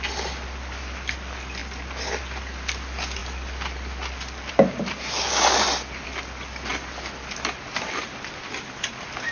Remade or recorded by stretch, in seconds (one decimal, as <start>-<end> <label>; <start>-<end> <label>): 0.0-9.3 recorded